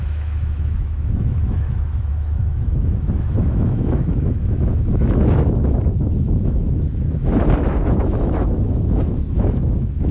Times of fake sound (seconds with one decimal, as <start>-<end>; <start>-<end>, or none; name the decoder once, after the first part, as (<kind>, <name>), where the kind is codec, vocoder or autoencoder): 0.0-10.1 (autoencoder, DAC-VAE)